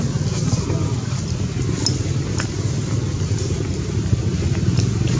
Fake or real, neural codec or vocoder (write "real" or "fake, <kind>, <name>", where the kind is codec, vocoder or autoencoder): real